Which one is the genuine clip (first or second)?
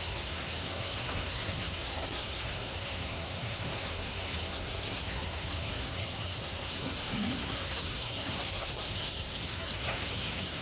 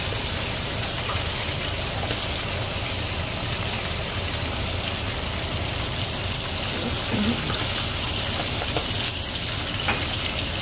second